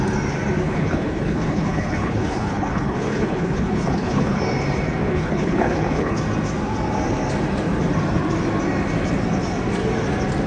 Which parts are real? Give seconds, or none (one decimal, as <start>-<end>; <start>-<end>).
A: 0.0-0.6; 4.4-5.1; 6.2-10.5